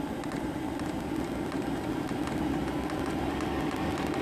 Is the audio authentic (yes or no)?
yes